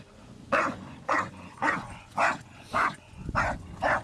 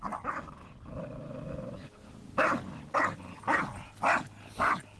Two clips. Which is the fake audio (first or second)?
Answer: first